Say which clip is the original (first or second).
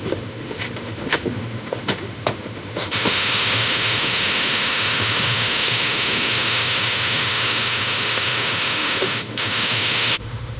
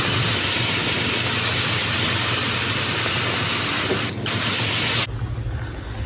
second